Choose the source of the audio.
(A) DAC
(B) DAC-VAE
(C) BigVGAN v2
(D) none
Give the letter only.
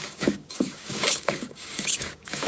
A